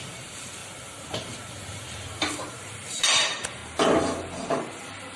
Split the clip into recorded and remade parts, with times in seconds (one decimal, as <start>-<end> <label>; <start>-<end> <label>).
0.0-0.6 remade; 0.6-2.5 recorded; 2.5-3.6 remade; 3.6-5.2 recorded

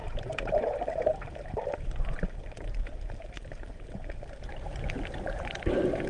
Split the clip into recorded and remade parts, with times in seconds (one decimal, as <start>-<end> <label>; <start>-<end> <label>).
0.0-6.1 remade

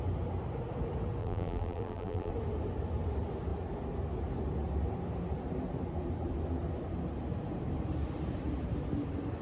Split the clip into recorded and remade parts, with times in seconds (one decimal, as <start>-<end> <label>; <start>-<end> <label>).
0.0-1.2 recorded; 1.2-2.3 remade; 2.3-9.4 recorded